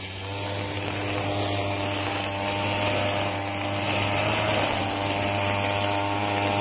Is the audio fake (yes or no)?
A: no